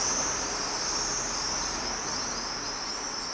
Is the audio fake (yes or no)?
no